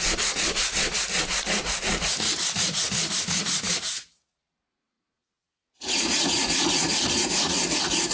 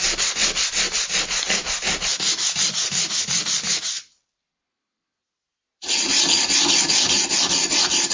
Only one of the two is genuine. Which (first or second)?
second